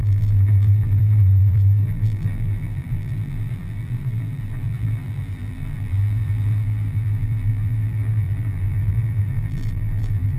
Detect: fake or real fake